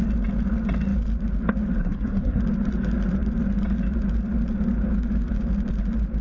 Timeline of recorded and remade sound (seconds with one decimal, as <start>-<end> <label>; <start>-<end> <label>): 0.0-1.8 recorded; 1.8-2.4 remade; 2.4-6.2 recorded

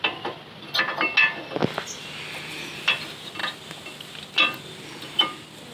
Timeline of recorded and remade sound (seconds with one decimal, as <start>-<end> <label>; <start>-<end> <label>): 0.0-5.7 recorded